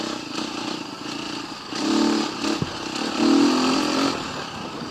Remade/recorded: recorded